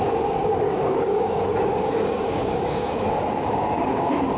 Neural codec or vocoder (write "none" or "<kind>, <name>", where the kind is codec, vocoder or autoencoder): codec, DAC